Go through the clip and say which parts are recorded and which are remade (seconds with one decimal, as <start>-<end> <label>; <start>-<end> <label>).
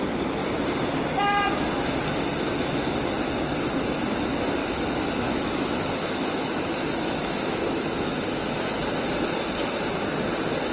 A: 0.0-4.6 recorded; 4.6-8.8 remade; 8.8-10.7 recorded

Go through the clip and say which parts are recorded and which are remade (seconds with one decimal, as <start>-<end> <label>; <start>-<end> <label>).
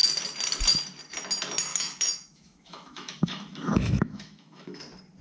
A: 0.0-1.7 recorded; 1.7-4.8 remade; 4.8-5.2 recorded